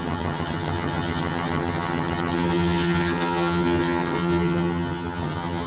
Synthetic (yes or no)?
yes